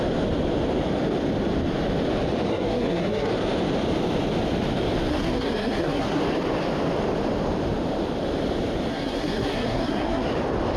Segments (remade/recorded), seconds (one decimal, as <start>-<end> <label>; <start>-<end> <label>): 0.0-2.5 recorded; 2.5-3.3 remade; 3.3-5.1 recorded; 5.1-6.2 remade; 6.2-8.9 recorded; 8.9-10.3 remade; 10.3-10.8 recorded